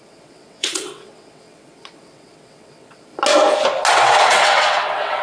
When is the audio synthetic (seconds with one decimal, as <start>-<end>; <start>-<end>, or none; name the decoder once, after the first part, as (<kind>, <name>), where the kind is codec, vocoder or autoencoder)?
0.0-3.1 (vocoder, WaveNeXt); 3.9-5.2